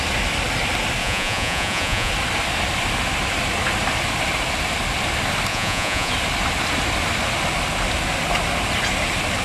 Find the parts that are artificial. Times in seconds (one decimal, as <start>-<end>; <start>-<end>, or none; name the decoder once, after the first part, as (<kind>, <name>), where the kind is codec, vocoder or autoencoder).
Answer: 1.0-2.1 (vocoder, Vocos); 5.5-6.1